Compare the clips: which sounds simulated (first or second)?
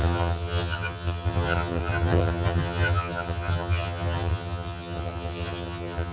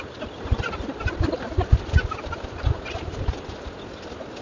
first